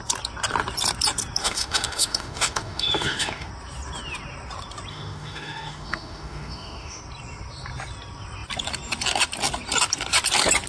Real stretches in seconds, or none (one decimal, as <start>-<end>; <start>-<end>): 0.0-1.4; 3.5-4.9; 7.0-10.7